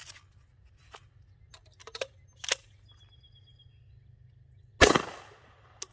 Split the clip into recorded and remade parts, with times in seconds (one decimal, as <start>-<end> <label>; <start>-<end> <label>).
0.0-5.9 recorded

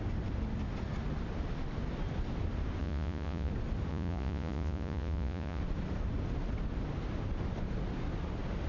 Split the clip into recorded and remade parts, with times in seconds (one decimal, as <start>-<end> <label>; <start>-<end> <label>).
0.0-2.8 recorded; 2.8-3.5 remade; 3.5-3.9 recorded; 3.9-5.6 remade; 5.6-8.7 recorded

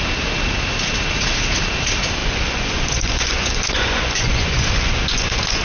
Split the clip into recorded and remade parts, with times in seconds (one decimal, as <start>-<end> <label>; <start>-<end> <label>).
0.0-2.2 recorded; 2.2-5.6 remade

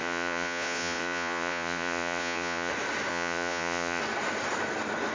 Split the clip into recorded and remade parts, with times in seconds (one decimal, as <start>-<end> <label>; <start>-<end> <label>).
0.0-2.7 remade; 2.7-3.1 recorded; 3.1-4.0 remade; 4.0-5.1 recorded

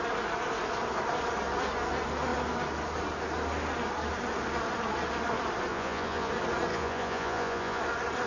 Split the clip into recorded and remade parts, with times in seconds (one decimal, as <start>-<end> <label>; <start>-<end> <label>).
0.0-5.7 recorded; 5.7-6.3 remade; 6.3-6.7 recorded; 6.7-7.8 remade; 7.8-8.3 recorded

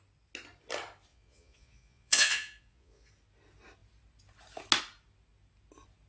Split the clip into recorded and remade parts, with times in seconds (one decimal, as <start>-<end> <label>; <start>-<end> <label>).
0.0-1.1 recorded; 1.1-3.1 remade; 3.1-6.1 recorded